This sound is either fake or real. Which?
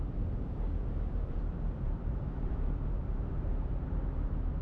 fake